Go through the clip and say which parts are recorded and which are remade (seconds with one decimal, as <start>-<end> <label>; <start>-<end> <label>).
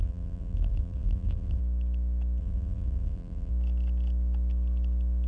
0.0-1.6 remade; 1.6-2.4 recorded; 2.4-3.5 remade; 3.5-5.3 recorded